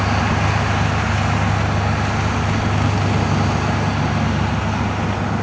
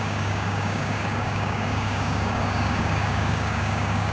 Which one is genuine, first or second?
first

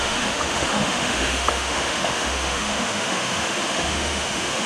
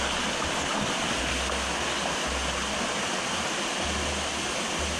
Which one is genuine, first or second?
second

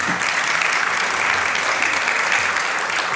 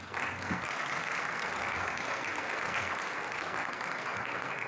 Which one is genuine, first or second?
first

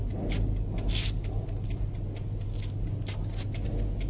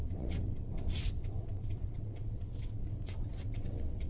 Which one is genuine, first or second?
first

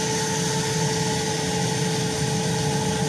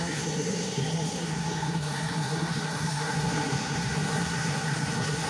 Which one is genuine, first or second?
first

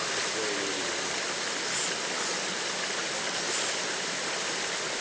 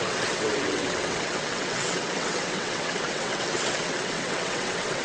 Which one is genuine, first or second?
first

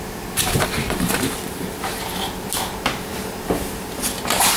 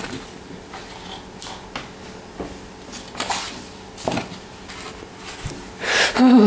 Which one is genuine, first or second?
second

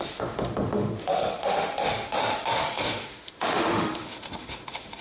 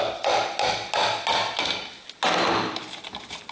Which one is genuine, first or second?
second